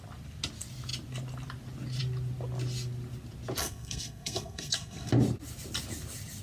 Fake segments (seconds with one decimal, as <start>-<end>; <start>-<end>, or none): 3.6-5.1